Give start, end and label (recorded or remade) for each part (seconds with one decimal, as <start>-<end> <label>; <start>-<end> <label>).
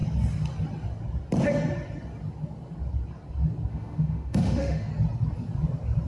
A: 0.0-3.7 recorded; 3.7-4.9 remade; 4.9-6.1 recorded